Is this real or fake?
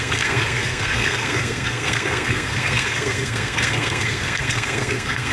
fake